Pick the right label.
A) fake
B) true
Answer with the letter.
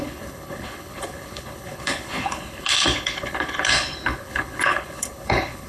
A